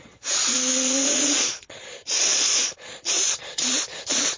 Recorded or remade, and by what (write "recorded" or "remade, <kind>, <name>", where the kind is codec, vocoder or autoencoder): remade, vocoder, Vocos